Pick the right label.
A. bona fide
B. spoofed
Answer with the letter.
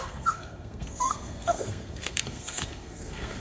B